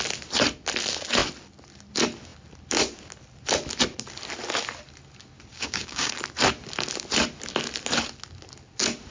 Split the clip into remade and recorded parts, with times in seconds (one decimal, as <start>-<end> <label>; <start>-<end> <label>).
0.0-5.5 recorded; 5.5-6.1 remade; 6.1-9.1 recorded